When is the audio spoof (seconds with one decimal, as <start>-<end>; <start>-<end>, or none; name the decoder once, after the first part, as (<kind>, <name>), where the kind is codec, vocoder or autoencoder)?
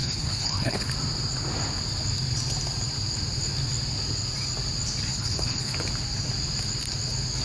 0.0-0.9 (codec, HILCodec); 5.1-5.7